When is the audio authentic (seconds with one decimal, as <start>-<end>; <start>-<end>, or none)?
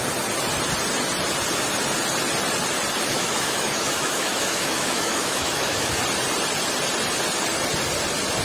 0.0-3.1; 6.0-8.4